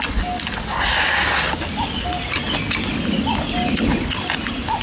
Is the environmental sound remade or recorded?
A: recorded